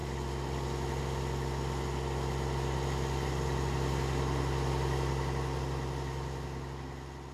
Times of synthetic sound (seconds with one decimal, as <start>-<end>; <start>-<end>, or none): none